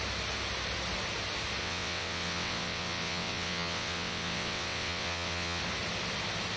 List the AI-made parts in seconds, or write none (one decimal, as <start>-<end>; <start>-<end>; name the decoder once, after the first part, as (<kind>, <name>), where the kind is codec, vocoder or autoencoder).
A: 1.6-5.6 (vocoder, WaveNeXt)